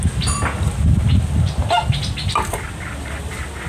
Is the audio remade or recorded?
recorded